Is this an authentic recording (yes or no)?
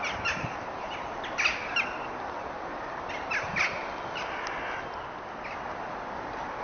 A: yes